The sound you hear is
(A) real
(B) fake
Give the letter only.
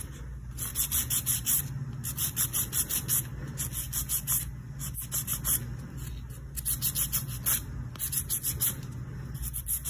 A